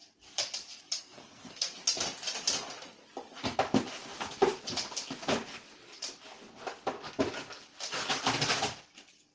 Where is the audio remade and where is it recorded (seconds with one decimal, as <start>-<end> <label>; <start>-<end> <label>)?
0.0-1.0 recorded; 1.0-1.7 remade; 1.7-9.3 recorded